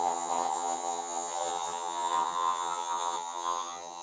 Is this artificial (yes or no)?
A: yes